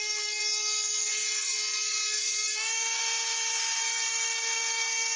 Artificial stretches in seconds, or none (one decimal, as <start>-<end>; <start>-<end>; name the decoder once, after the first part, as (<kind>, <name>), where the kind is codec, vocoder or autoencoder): 0.0-3.0 (codec, SNAC); 3.8-5.2